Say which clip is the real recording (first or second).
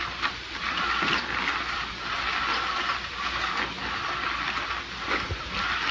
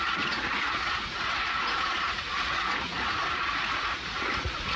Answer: first